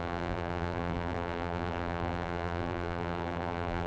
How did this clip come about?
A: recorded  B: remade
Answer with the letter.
B